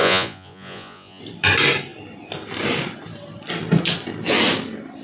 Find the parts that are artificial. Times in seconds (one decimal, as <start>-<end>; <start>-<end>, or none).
0.0-1.2